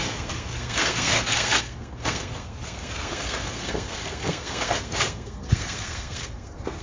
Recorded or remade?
remade